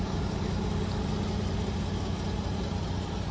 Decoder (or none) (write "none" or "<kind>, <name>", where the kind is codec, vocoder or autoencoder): none